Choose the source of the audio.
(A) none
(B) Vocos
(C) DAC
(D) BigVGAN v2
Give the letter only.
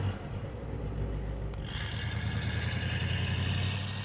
A